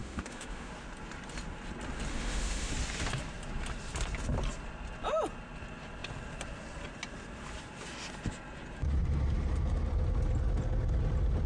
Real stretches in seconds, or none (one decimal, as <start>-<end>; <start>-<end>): 0.7-2.1; 2.7-11.5